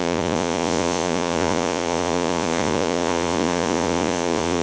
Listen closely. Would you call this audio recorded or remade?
remade